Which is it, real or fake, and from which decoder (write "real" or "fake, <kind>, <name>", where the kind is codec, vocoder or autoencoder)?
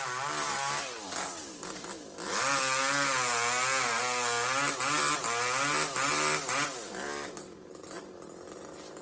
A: real